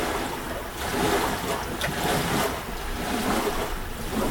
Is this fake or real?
real